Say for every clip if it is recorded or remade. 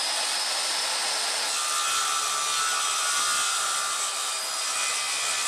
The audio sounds recorded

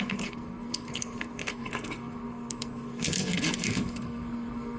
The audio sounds remade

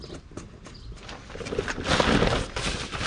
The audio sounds recorded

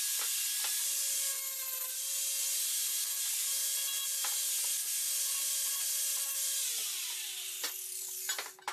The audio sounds recorded